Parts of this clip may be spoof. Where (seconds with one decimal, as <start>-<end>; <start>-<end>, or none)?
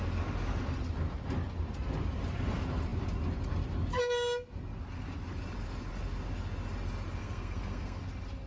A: 7.2-8.0